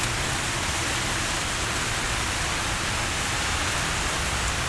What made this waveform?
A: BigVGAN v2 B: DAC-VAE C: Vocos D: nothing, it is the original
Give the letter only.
D